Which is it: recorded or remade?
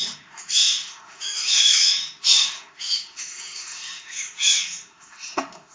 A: remade